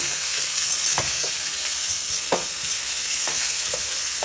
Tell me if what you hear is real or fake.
fake